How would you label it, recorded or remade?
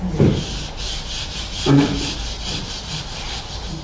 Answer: recorded